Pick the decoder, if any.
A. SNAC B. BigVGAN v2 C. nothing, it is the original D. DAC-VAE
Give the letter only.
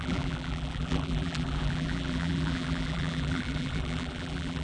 B